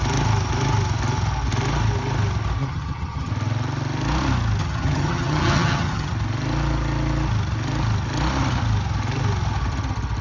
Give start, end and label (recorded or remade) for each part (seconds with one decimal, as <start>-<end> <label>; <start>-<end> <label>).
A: 0.0-2.6 recorded; 2.6-3.3 remade; 3.3-4.6 recorded; 4.6-6.1 remade; 6.1-10.2 recorded